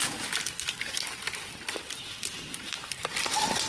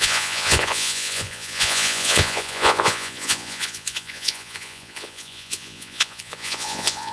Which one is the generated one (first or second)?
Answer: second